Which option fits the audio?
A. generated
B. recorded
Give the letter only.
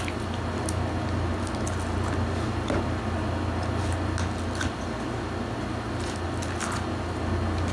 B